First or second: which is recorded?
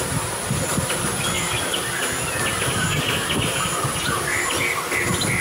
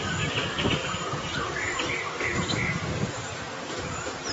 first